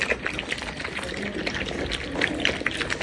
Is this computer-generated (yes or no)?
no